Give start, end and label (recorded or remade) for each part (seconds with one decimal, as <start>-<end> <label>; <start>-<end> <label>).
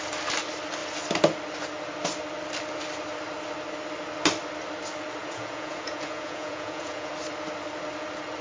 0.0-5.2 recorded; 5.2-7.1 remade; 7.1-8.4 recorded